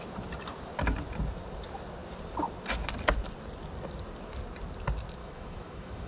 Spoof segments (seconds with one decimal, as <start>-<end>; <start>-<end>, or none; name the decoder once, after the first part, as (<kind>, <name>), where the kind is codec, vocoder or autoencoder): 5.2-6.1 (autoencoder, DAC-VAE)